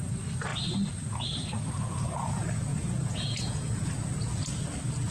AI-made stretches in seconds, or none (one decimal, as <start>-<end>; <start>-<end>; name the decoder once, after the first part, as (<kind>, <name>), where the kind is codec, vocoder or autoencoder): 2.7-3.9 (vocoder, Vocos)